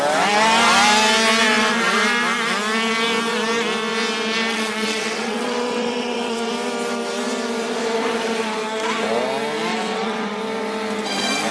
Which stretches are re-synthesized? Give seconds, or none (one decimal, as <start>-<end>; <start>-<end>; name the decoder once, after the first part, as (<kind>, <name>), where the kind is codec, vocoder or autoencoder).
4.5-6.5 (vocoder, WaveNeXt); 9.7-10.4

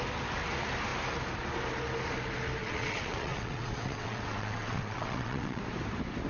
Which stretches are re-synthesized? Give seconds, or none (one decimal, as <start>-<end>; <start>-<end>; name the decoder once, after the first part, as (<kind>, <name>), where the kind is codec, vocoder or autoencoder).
2.6-5.6 (vocoder, WaveNeXt)